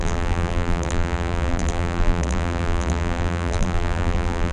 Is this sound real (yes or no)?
no